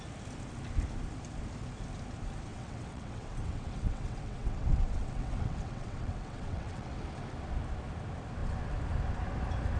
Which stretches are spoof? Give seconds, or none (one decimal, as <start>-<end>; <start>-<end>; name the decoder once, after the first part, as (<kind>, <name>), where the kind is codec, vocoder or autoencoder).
2.5-7.0 (vocoder, WaveNeXt)